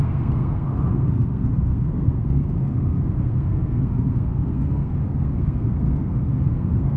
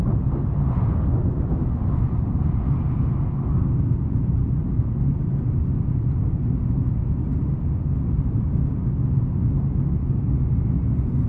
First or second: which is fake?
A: first